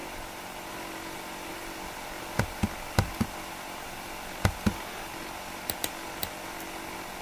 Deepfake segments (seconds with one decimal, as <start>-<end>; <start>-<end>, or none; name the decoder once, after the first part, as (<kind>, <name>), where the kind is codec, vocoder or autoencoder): 0.0-0.7 (vocoder, BigVGAN v2); 1.5-5.1